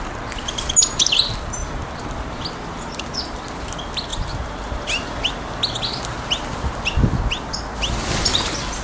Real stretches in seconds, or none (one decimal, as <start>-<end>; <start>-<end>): 0.0-8.8